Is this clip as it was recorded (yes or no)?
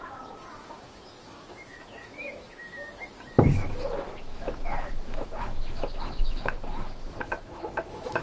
no